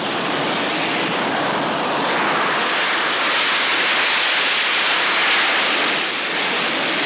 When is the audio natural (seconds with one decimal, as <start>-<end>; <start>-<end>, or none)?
0.4-4.7; 5.2-7.1

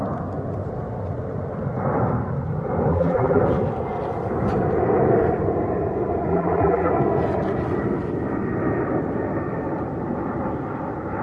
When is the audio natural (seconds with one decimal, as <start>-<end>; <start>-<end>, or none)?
0.0-2.9; 3.4-6.3; 6.9-11.2

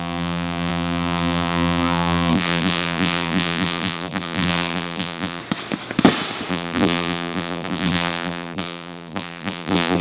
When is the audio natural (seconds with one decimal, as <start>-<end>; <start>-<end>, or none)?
5.4-6.5

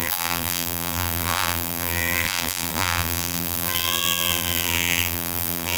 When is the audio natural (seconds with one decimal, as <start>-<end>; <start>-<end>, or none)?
none

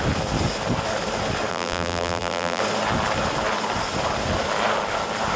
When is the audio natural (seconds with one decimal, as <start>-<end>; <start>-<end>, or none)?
0.0-1.5; 2.6-5.4

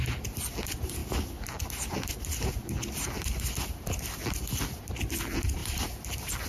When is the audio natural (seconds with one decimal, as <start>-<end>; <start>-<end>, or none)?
0.0-6.5

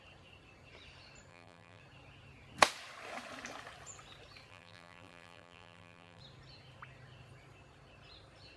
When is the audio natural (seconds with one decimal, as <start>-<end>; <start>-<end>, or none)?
0.0-1.3; 1.8-4.5; 6.2-8.6

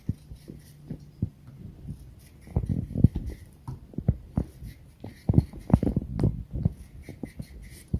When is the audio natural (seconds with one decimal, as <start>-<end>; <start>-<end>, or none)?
7.1-8.0